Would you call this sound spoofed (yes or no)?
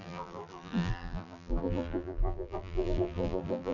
yes